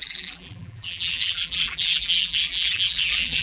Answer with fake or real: fake